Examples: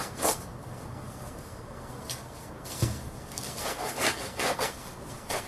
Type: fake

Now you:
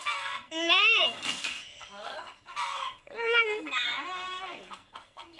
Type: fake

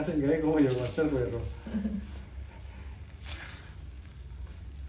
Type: real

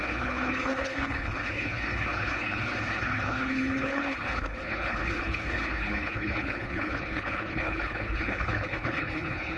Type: fake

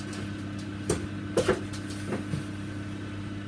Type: real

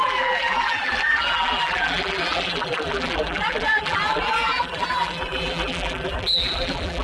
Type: fake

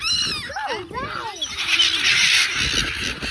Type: real